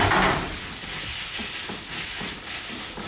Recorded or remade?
recorded